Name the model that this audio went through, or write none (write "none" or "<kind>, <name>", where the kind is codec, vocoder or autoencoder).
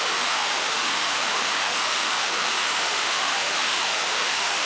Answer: autoencoder, DAC-VAE